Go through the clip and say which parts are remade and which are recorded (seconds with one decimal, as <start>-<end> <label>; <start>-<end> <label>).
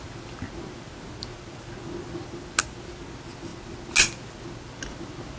0.0-5.4 recorded